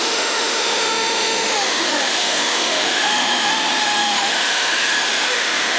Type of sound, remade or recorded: remade